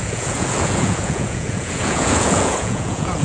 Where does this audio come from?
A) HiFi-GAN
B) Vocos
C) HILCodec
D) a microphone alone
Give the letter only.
B